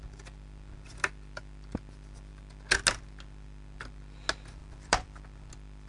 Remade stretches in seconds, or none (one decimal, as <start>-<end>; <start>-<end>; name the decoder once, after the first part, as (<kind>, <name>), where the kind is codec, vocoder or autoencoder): 4.6-5.2 (vocoder, BigVGAN v2)